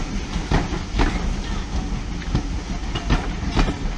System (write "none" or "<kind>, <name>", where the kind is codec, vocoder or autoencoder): none